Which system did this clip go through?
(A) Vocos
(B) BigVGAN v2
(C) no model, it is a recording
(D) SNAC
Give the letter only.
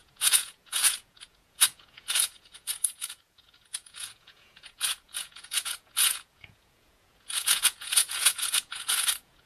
A